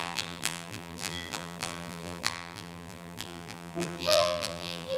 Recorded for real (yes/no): no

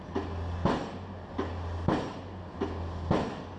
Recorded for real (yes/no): yes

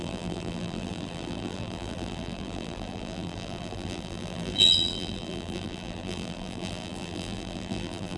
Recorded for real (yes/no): no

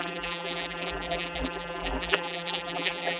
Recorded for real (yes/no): no